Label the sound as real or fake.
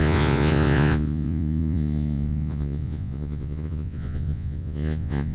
fake